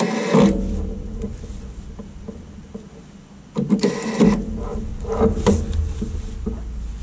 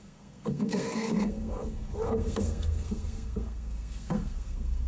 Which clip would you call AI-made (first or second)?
second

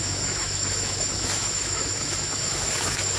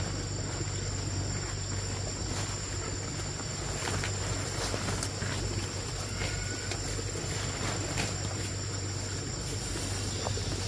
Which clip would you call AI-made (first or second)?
first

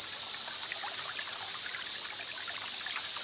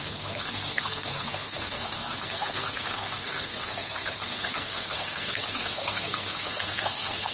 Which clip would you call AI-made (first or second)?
second